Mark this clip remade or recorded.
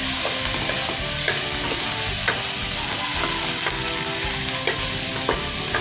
recorded